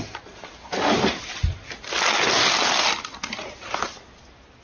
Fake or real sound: real